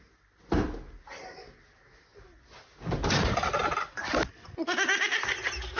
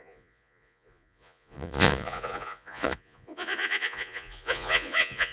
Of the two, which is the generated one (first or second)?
second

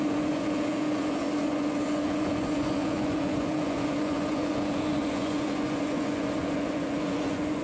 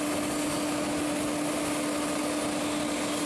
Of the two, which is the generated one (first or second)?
first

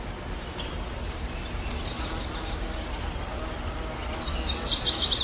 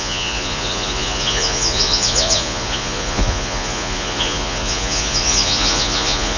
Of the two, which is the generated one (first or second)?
second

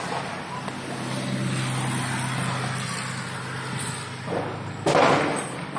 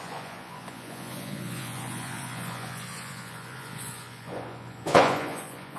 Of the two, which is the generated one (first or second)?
second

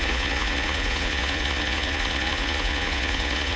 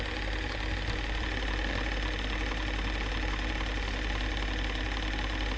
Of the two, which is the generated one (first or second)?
first